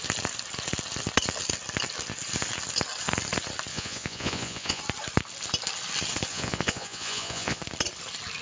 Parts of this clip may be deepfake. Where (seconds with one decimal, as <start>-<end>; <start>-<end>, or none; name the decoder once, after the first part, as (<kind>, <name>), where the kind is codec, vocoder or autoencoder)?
3.7-4.8 (vocoder, Vocos); 6.3-7.6